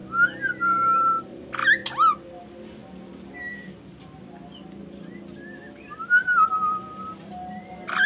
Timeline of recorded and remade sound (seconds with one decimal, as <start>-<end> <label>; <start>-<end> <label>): 0.0-1.2 recorded; 1.2-1.8 remade; 1.8-2.4 recorded; 2.4-2.8 remade; 2.8-6.7 recorded; 6.7-8.1 remade